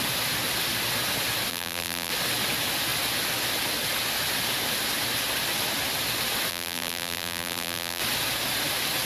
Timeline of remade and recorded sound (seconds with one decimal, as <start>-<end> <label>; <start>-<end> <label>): 0.0-1.5 recorded; 1.5-2.1 remade; 2.1-6.5 recorded; 6.5-8.0 remade; 8.0-9.0 recorded